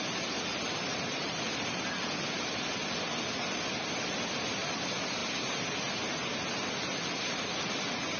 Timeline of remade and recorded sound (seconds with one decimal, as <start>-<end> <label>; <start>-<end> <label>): 0.0-0.5 recorded; 0.5-2.0 remade; 2.0-8.2 recorded